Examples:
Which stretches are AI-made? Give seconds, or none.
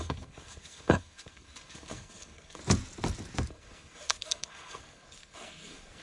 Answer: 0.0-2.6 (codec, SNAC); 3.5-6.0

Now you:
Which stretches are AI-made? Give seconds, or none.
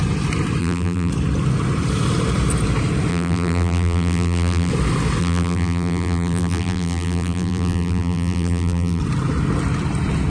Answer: 0.6-1.1 (vocoder, BigVGAN v2); 3.1-4.7; 5.2-9.0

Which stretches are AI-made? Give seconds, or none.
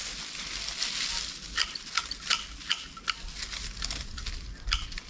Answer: none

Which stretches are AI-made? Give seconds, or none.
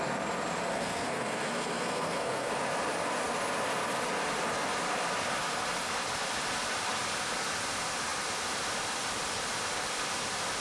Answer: 0.7-2.5 (codec, SNAC)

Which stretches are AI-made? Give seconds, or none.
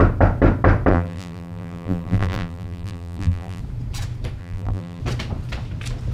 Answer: 0.9-3.6 (vocoder, BigVGAN v2); 4.4-5.0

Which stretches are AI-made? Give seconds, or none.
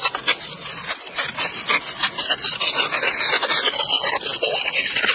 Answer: none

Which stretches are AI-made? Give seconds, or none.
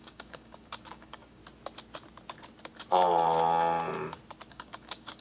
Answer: 0.0-1.4 (codec, DAC); 4.5-5.2